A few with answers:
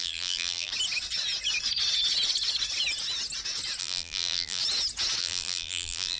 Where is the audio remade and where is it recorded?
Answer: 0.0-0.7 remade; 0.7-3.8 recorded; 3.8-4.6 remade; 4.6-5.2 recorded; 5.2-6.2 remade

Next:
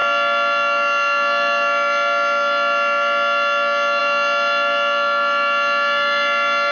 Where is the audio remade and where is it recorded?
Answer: 0.0-6.7 recorded

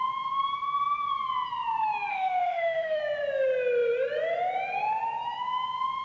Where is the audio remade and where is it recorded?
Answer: 0.0-2.1 recorded; 2.1-3.0 remade; 3.0-6.0 recorded

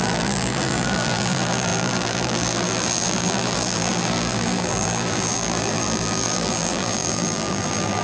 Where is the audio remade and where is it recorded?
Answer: 0.0-8.0 remade

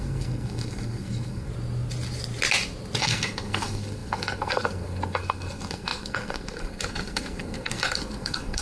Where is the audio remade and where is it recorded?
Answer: 0.0-1.5 remade; 1.5-3.0 recorded; 3.0-8.6 remade

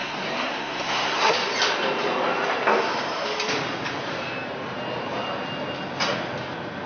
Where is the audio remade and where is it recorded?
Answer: 0.0-1.3 remade; 1.3-6.9 recorded